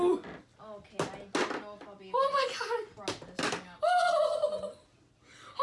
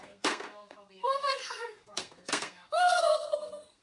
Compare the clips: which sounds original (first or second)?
first